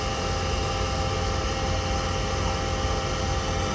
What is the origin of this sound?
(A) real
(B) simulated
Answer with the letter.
A